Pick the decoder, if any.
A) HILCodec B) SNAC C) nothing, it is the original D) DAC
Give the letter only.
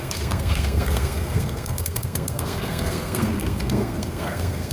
B